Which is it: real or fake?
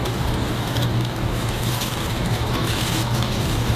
fake